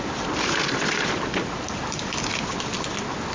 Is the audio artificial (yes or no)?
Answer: yes